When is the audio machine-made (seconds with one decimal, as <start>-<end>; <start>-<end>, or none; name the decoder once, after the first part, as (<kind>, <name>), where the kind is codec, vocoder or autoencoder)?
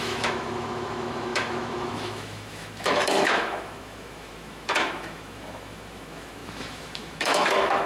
0.0-7.9 (autoencoder, DAC-VAE)